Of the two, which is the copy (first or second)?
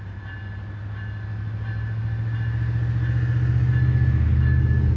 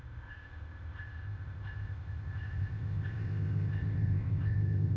second